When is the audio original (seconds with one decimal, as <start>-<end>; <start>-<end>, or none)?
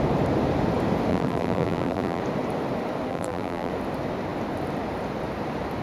0.0-1.1; 2.2-3.1; 3.7-5.8